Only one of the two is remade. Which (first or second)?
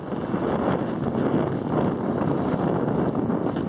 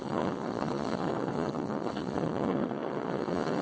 second